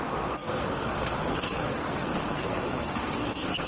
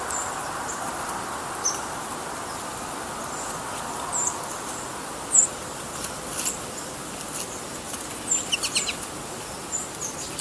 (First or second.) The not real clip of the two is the first